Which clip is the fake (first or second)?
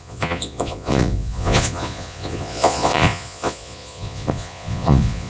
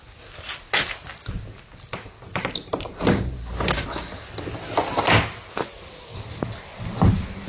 first